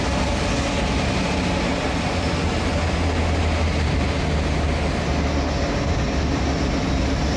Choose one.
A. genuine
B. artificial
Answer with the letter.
A